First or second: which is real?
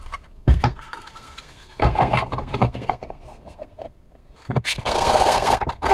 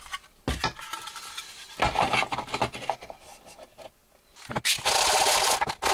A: second